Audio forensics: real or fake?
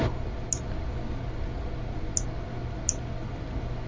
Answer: real